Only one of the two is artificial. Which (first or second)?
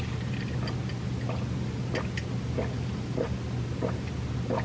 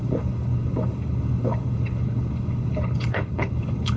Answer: second